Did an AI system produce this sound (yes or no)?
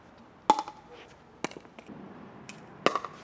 no